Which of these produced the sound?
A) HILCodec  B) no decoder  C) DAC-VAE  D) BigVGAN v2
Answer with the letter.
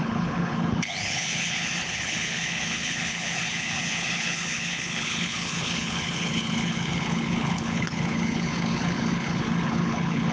A